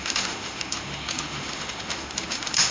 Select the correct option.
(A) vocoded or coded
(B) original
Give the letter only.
A